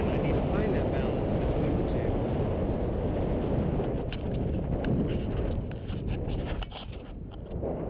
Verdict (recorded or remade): recorded